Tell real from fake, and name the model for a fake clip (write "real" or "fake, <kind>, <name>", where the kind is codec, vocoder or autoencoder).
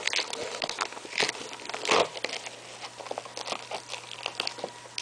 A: real